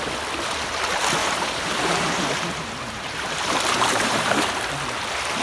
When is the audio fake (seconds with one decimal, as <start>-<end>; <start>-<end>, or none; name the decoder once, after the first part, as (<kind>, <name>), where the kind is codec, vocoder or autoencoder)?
1.2-4.4 (vocoder, BigVGAN v2)